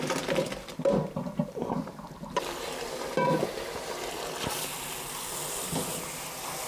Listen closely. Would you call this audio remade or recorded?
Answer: remade